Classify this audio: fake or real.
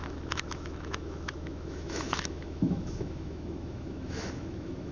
fake